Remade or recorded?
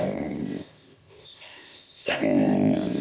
remade